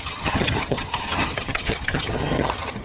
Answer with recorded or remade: remade